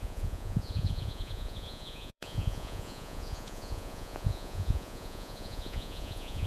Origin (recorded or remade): remade